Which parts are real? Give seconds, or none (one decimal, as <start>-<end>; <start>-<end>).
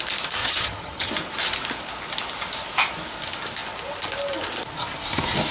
0.0-0.4; 1.1-5.5